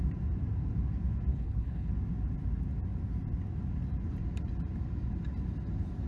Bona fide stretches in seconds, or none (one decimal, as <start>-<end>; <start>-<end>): 0.0-1.3; 1.9-6.1